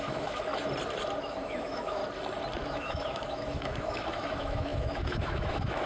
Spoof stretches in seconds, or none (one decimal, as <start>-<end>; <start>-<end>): 0.0-0.5; 1.2-2.0; 2.6-5.9